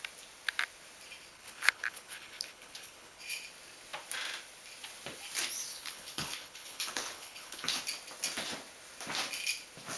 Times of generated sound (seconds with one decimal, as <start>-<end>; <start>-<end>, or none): 1.3-3.2; 5.7-7.8